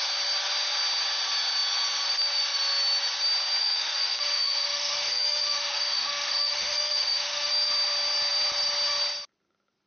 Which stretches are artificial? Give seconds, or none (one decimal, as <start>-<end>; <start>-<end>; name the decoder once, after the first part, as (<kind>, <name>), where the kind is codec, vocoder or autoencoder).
3.6-7.5 (autoencoder, DAC-VAE)